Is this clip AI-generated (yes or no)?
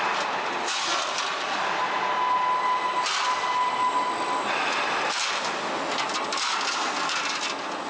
no